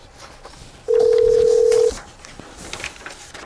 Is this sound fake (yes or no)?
no